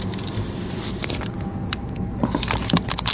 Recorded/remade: recorded